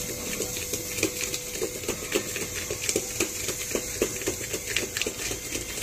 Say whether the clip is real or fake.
real